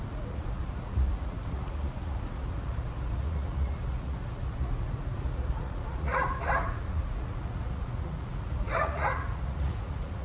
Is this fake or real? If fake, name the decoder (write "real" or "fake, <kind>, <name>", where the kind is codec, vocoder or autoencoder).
fake, vocoder, Vocos